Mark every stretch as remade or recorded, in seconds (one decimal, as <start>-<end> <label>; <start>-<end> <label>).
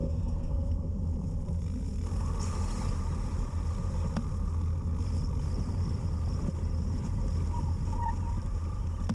0.0-1.0 remade; 1.0-9.1 recorded